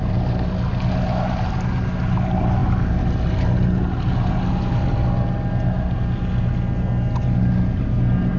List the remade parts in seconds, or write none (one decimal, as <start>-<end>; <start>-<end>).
none